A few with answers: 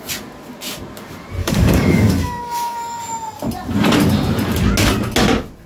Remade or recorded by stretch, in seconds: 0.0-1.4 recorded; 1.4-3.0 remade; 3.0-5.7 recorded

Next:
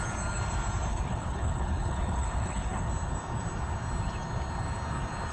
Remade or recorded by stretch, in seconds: 0.0-0.9 recorded; 0.9-2.9 remade; 2.9-5.3 recorded